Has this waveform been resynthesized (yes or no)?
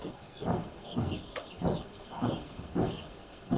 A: yes